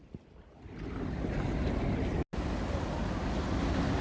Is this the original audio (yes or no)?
yes